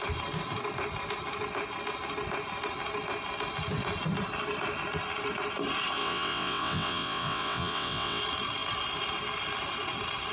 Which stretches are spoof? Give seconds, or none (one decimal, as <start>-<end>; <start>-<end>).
6.0-8.2